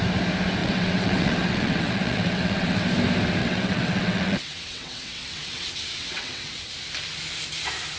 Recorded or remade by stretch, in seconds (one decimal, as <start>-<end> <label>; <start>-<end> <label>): 0.0-0.6 recorded; 0.6-2.8 remade; 2.8-3.4 recorded; 3.4-6.7 remade; 6.7-8.0 recorded